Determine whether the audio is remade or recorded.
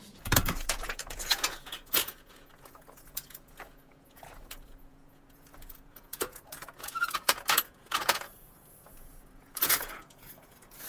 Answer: remade